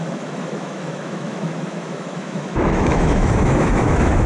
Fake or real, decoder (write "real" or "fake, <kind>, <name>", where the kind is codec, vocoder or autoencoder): fake, autoencoder, DAC-VAE